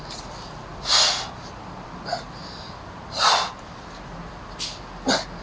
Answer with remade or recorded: recorded